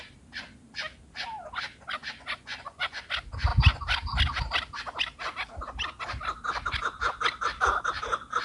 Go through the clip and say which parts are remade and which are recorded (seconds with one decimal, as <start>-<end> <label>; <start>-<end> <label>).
0.0-2.0 recorded; 2.0-3.0 remade; 3.0-8.4 recorded